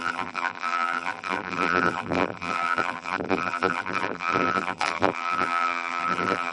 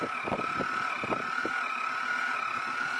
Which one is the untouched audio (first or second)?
second